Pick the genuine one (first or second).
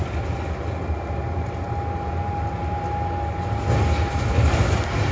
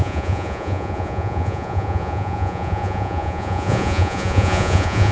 first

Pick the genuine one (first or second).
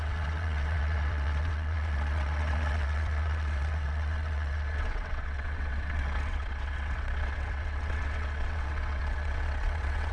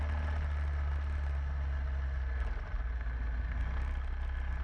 second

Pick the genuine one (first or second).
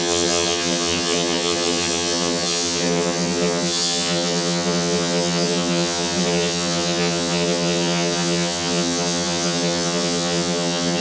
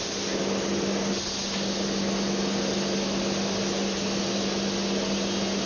second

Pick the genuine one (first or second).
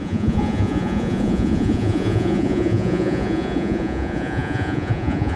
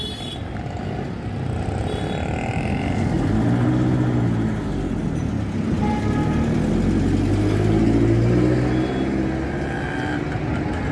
second